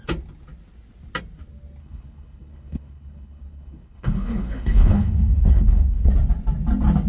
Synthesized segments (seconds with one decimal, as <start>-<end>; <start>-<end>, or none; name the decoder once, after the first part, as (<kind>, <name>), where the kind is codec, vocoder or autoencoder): 1.8-6.1 (codec, HILCodec)